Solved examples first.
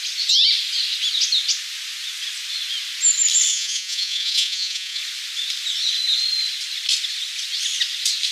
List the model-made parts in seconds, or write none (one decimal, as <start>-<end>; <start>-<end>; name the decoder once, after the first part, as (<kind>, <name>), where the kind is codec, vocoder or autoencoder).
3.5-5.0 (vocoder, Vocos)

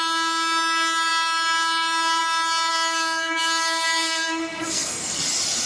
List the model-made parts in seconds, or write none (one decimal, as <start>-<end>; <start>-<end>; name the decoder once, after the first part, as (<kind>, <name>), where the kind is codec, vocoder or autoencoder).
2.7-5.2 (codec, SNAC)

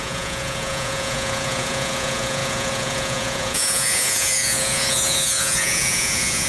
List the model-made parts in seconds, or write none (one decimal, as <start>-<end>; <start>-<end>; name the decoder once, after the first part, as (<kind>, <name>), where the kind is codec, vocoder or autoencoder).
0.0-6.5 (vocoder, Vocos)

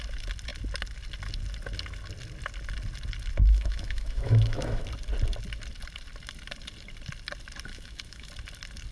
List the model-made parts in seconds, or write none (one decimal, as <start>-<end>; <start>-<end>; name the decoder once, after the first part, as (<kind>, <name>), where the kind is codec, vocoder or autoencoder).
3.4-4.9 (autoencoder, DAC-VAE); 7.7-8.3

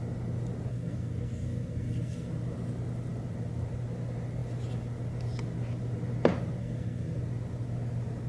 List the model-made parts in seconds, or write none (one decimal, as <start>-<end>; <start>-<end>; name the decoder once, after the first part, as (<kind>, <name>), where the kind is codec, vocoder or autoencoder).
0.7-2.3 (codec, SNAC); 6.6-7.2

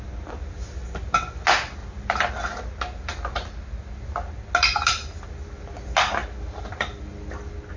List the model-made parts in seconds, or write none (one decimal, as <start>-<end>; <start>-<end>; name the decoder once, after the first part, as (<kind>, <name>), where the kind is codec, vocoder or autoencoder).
1.8-2.3 (vocoder, BigVGAN v2); 6.2-7.0

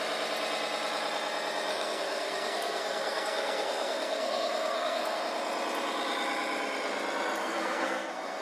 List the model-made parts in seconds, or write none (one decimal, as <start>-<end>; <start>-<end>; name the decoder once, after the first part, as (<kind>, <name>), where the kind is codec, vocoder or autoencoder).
1.7-5.2 (codec, SNAC); 7.4-8.4